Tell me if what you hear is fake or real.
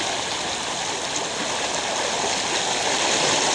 real